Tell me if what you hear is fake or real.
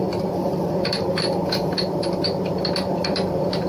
fake